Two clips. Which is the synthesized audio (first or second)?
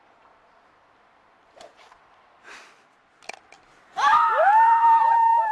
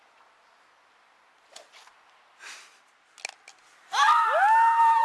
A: first